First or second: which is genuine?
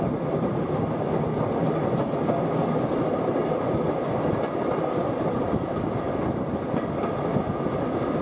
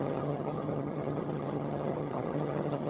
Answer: first